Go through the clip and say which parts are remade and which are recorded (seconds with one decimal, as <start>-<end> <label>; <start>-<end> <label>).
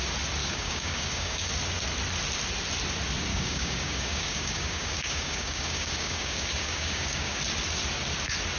0.0-0.4 recorded; 0.4-1.5 remade; 1.5-3.3 recorded; 3.3-7.4 remade; 7.4-8.6 recorded